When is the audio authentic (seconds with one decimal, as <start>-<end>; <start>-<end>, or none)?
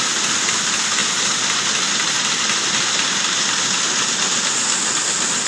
0.0-5.5